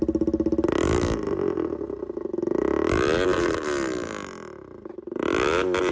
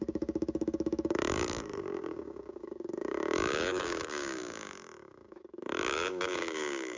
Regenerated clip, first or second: second